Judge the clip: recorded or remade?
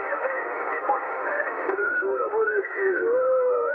remade